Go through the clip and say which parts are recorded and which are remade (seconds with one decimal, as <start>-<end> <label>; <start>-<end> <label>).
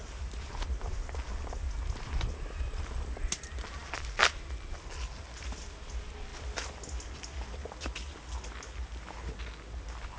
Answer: 0.0-10.2 recorded